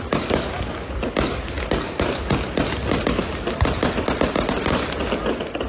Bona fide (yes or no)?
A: yes